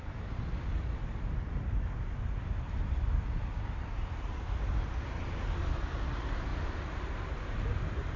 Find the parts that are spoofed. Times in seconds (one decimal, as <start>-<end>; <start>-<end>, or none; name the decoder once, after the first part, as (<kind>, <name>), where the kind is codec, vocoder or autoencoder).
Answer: none